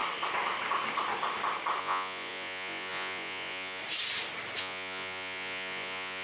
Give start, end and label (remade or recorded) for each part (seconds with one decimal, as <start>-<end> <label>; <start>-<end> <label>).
0.0-1.8 recorded; 1.8-3.8 remade; 3.8-4.6 recorded; 4.6-6.2 remade